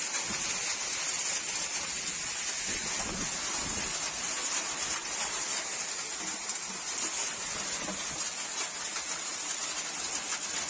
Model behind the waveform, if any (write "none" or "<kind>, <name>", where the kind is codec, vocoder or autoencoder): none